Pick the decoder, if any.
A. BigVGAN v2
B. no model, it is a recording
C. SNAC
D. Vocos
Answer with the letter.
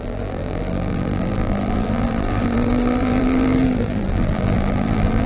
A